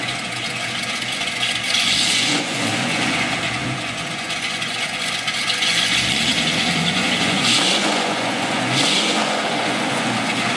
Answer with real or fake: fake